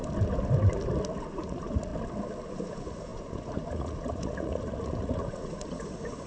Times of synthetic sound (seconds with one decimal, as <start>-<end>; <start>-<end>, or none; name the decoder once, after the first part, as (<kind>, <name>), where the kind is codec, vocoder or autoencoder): 1.2-1.9 (vocoder, Vocos); 2.5-6.3